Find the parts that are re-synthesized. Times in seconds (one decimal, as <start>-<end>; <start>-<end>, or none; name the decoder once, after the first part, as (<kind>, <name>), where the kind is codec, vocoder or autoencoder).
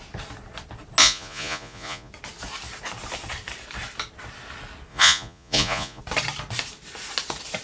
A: 1.0-2.1 (vocoder, Vocos); 4.9-6.0